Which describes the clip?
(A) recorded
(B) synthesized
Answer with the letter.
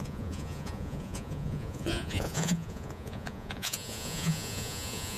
B